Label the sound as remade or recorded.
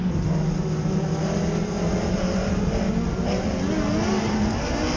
recorded